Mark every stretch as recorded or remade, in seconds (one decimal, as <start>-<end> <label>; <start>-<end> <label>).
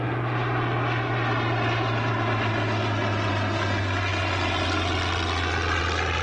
0.0-6.2 recorded